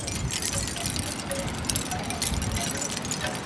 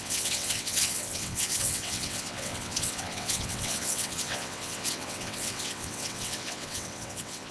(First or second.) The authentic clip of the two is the first